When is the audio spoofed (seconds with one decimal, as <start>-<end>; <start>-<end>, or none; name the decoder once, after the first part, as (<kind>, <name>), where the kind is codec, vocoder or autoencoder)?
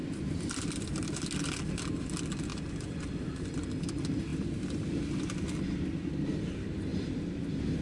0.0-0.9 (vocoder, BigVGAN v2); 2.5-3.5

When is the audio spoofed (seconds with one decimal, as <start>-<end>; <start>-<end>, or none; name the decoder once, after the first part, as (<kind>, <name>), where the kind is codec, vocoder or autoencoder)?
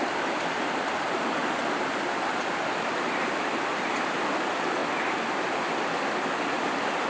none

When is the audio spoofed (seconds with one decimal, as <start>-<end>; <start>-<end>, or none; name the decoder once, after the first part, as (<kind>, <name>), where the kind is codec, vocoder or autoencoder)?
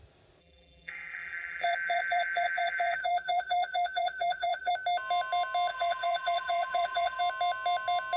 0.4-4.7 (vocoder, BigVGAN v2); 5.7-7.2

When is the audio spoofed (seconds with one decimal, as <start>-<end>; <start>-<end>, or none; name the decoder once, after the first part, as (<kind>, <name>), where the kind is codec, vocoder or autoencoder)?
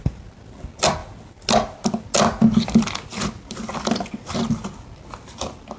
none